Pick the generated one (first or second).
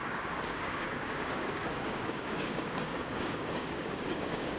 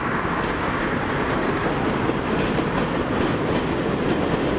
first